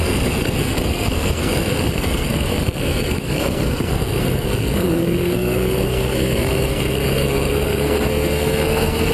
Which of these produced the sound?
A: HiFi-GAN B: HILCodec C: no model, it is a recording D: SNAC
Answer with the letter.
D